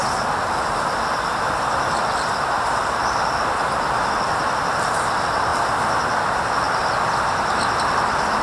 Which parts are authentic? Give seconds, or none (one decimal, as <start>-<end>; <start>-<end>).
0.0-8.4

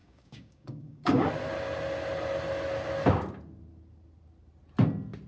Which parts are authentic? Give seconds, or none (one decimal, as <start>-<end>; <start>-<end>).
1.3-5.3

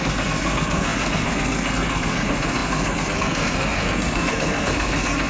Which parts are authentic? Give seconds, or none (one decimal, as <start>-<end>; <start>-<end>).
none

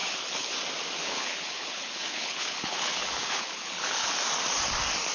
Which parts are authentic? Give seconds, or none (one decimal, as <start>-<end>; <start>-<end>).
0.5-1.0; 4.1-5.1